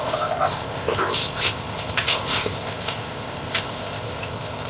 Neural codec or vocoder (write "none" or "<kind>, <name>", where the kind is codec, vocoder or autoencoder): codec, ZipCodec